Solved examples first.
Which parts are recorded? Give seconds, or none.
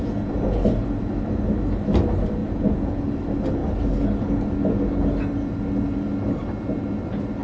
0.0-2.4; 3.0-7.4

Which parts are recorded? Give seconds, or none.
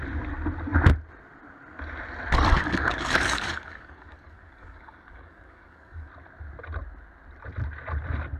0.0-2.5; 6.1-8.4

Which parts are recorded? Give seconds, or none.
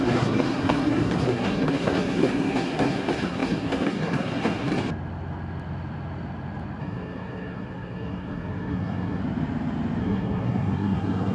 4.7-6.8; 9.2-10.0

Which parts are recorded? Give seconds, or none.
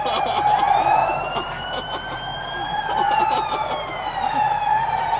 0.0-5.2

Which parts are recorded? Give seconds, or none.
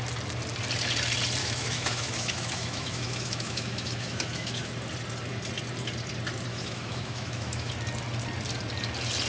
0.0-1.4; 4.7-6.5; 7.7-9.3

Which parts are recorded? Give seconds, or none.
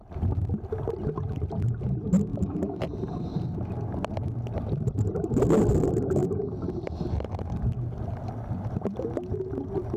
0.0-2.3; 2.8-10.0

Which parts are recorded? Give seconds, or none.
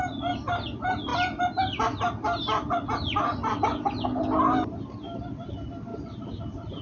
0.0-5.9